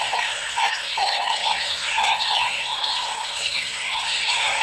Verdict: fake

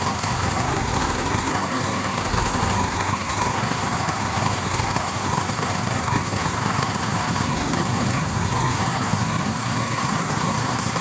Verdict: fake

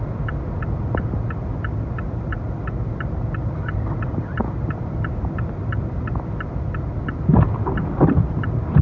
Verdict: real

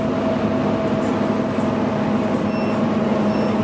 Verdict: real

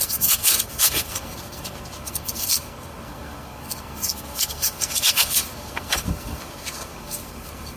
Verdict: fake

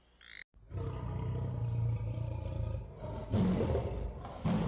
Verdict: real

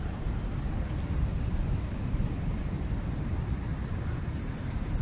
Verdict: real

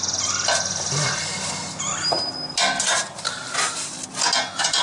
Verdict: real